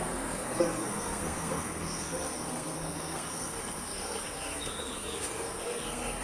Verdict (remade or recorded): remade